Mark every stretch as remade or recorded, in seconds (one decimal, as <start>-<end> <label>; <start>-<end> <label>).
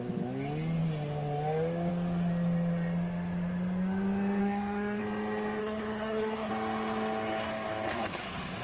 0.0-4.4 recorded; 4.4-5.0 remade; 5.0-5.6 recorded; 5.6-6.5 remade; 6.5-8.6 recorded